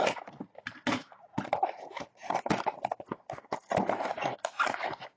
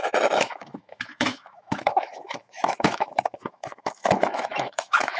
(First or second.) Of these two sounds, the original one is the first